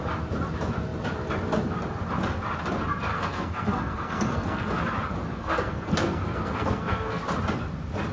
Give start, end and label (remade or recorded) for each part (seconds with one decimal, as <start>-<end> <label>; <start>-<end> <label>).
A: 0.0-3.1 recorded; 3.1-4.8 remade; 4.8-5.3 recorded; 5.3-7.2 remade; 7.2-8.1 recorded